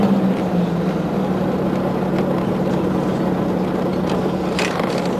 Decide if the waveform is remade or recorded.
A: recorded